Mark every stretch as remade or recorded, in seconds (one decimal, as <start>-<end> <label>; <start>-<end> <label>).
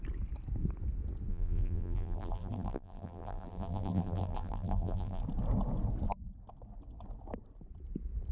0.0-1.3 recorded; 1.3-5.2 remade; 5.2-8.3 recorded